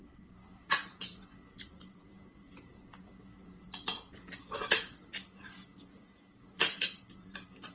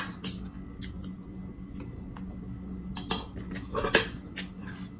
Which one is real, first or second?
second